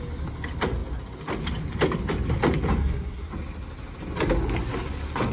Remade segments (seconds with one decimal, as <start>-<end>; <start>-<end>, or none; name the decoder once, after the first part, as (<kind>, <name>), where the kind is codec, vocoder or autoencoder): 2.8-3.3 (codec, SNAC)